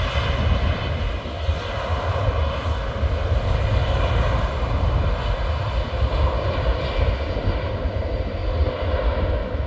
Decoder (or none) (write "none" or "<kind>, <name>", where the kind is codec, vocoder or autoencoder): none